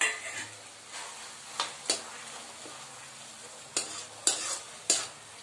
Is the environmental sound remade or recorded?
recorded